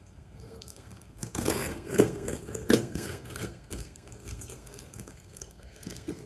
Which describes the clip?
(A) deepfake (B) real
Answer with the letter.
A